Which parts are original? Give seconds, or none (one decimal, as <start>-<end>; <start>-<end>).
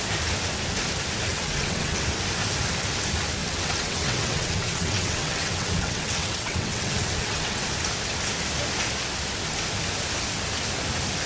0.0-1.3; 2.0-3.4; 7.6-11.3